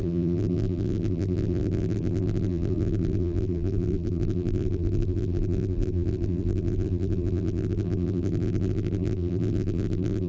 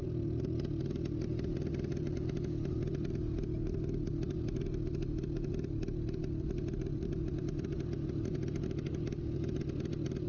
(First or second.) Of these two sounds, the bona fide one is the second